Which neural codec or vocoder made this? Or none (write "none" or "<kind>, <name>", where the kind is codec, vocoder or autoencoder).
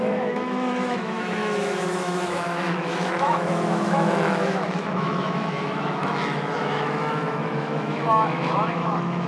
autoencoder, DAC-VAE